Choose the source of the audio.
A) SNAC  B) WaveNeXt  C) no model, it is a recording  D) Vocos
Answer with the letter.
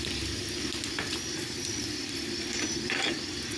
C